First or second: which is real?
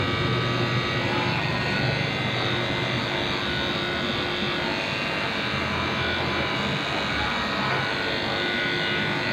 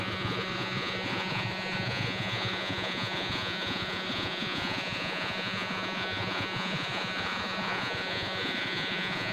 first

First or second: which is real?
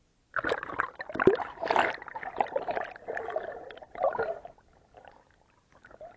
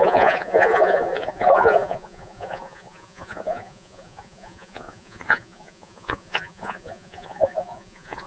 first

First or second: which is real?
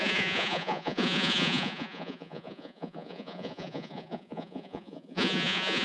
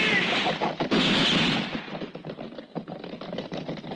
second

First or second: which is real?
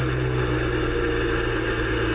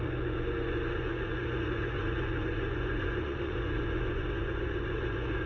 first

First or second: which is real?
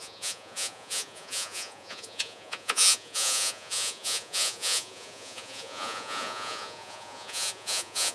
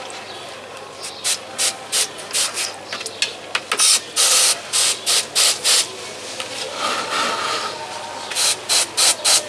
second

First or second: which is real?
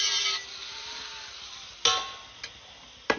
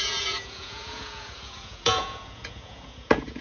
first